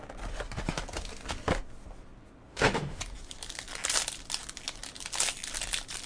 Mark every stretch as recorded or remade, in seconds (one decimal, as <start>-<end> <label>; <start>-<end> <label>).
0.0-2.5 recorded; 2.5-3.0 remade; 3.0-6.1 recorded